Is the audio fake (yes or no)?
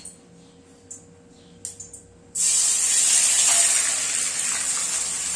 no